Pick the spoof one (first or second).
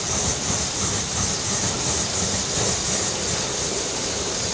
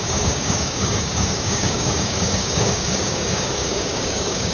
second